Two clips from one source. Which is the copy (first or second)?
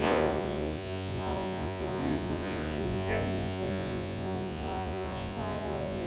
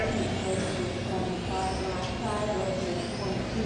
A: first